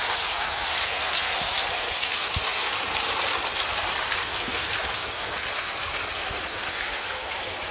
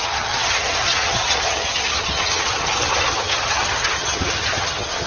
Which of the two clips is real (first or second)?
first